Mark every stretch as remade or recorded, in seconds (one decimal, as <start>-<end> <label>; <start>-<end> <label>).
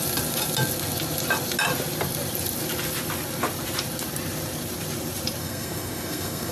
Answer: 0.0-5.4 recorded; 5.4-6.5 remade